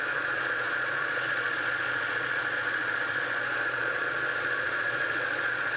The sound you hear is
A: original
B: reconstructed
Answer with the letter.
B